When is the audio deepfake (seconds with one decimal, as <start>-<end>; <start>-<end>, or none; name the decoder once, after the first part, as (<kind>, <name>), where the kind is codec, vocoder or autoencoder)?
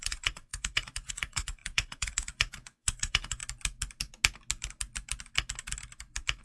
0.0-3.4 (vocoder, Vocos)